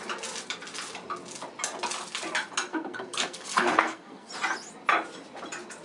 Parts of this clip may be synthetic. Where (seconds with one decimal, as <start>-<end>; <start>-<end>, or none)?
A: 2.7-4.3